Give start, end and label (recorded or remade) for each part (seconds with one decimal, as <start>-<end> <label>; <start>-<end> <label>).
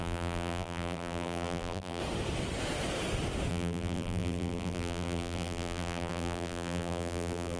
0.0-2.0 remade; 2.0-3.5 recorded; 3.5-7.6 remade